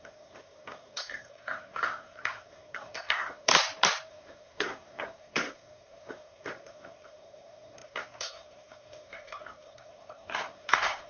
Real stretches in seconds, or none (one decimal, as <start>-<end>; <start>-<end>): 3.5-4.1